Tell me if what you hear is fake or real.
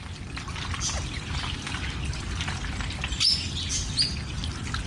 real